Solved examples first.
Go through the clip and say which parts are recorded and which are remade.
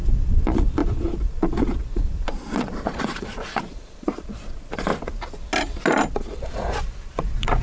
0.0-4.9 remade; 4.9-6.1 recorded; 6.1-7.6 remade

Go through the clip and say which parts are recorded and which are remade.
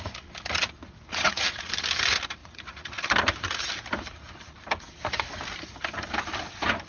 0.0-1.1 recorded; 1.1-1.7 remade; 1.7-2.4 recorded; 2.4-3.0 remade; 3.0-6.9 recorded